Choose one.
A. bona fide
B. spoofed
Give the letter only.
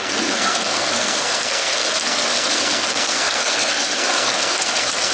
B